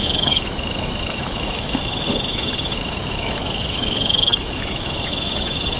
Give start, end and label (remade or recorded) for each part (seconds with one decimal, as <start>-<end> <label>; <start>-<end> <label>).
0.0-5.8 remade